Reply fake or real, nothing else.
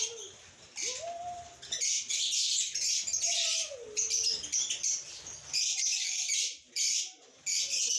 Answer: real